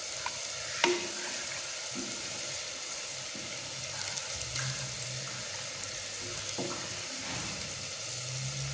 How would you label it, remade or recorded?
recorded